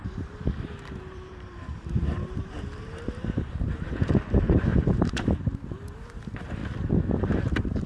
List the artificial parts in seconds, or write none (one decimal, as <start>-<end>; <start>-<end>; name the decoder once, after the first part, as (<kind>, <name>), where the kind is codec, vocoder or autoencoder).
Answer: 0.0-6.6 (vocoder, BigVGAN v2); 7.5-7.9

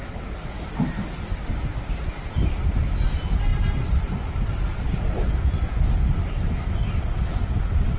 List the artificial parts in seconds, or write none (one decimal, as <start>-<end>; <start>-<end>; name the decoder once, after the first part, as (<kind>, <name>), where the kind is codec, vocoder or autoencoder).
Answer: none

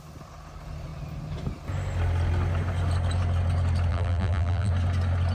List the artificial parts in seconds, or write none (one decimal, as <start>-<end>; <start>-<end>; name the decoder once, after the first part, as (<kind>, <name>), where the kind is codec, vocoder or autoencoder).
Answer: 3.9-4.7 (vocoder, BigVGAN v2)

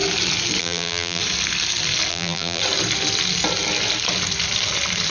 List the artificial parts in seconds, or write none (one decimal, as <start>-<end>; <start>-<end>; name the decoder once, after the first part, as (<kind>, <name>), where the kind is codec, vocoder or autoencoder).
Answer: 0.6-1.2 (vocoder, BigVGAN v2); 2.1-2.6

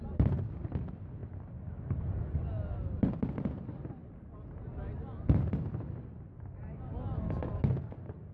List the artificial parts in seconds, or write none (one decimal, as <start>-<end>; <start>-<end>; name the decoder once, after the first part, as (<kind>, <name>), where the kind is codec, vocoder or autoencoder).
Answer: none